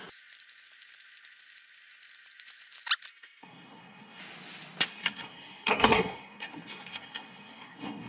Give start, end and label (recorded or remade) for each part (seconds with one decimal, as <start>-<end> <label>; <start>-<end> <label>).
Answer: 0.0-3.1 recorded; 3.1-4.2 remade; 4.2-4.9 recorded; 4.9-8.1 remade